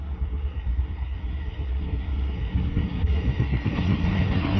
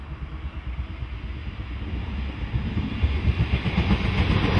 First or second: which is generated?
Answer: first